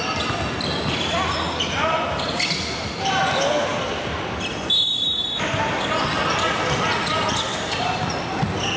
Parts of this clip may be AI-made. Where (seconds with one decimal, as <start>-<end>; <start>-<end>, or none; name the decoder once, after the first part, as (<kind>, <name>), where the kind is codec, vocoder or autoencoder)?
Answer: none